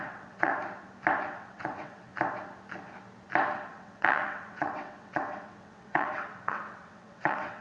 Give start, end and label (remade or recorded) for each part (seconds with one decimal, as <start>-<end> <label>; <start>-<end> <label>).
0.0-0.5 remade; 0.5-1.2 recorded; 1.2-2.1 remade; 2.1-3.5 recorded; 3.5-7.6 remade